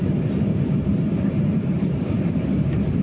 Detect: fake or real fake